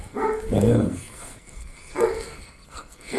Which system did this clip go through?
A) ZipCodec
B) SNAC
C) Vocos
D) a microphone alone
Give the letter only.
B